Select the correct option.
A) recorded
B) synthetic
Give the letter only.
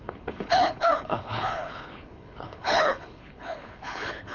B